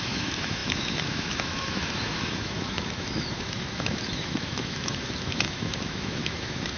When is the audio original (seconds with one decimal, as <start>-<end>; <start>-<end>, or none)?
none